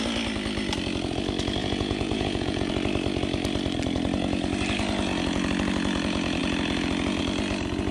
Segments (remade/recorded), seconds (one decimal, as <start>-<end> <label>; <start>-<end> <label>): 0.0-1.6 recorded; 1.6-2.7 remade; 2.7-7.9 recorded